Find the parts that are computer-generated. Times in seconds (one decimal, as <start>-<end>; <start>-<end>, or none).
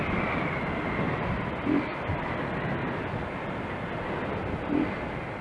none